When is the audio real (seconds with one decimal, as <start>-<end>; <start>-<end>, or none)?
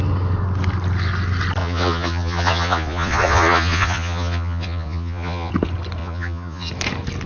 0.0-1.6; 5.5-6.0; 6.7-7.3